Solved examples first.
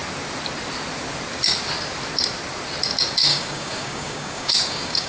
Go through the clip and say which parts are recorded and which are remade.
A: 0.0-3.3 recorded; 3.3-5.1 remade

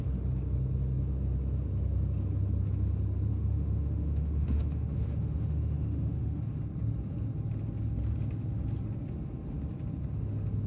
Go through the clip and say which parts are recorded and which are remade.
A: 0.0-3.3 recorded; 3.3-6.4 remade; 6.4-10.7 recorded